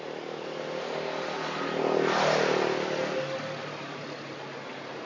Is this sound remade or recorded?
recorded